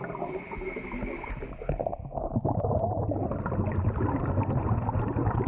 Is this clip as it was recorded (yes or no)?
yes